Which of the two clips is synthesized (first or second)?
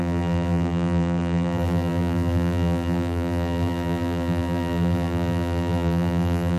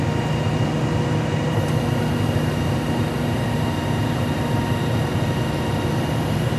first